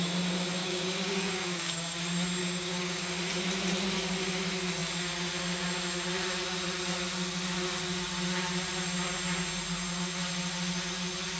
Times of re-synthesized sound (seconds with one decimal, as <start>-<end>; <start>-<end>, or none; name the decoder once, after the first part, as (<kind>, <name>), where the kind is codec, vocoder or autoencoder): 0.6-2.0 (codec, DAC); 2.4-3.1